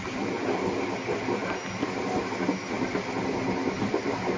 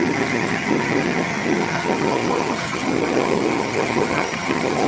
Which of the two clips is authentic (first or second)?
first